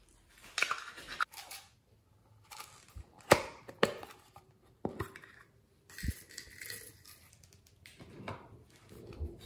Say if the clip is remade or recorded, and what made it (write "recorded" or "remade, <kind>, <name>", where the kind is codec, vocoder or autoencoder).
recorded